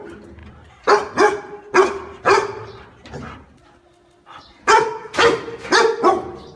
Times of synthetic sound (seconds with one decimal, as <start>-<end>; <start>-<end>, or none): none